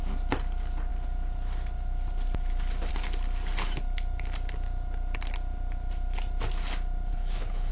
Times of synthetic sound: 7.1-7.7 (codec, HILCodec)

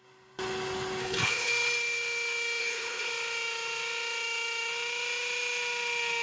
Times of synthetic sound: 1.0-1.5 (codec, HILCodec); 2.6-3.1

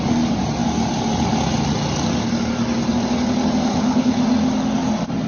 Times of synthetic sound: 3.7-4.2 (codec, HILCodec)

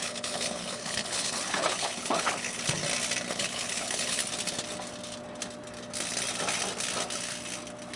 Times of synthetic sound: 0.0-2.8 (codec, HILCodec); 3.3-4.2

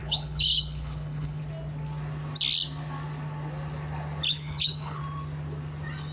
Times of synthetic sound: 0.0-1.4 (codec, HILCodec); 4.3-5.0

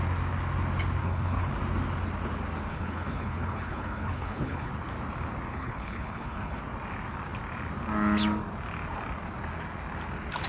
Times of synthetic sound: 1.0-1.5 (codec, HILCodec); 2.7-4.7; 5.5-6.6